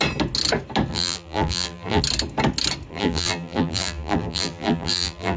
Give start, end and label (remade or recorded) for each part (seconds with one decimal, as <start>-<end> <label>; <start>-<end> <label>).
0.0-0.9 recorded; 0.9-2.0 remade; 2.0-2.9 recorded; 2.9-5.4 remade